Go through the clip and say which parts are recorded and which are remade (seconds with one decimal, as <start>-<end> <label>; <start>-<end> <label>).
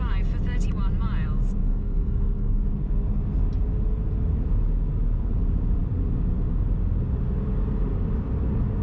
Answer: 0.0-1.6 recorded; 1.6-2.5 remade; 2.5-8.8 recorded